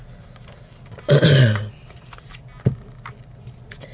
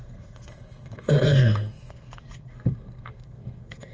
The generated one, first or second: second